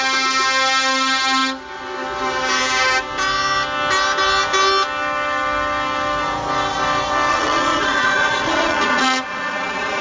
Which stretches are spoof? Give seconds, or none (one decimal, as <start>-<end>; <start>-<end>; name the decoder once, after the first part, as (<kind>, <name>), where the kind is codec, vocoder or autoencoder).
7.3-10.0 (vocoder, Vocos)